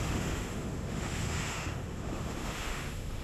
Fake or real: fake